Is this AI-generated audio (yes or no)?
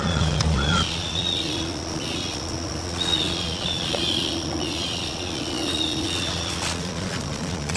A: yes